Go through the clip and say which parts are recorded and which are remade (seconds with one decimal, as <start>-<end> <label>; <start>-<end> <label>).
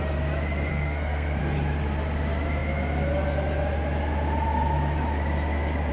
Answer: 0.0-0.7 recorded; 0.7-1.4 remade; 1.4-5.9 recorded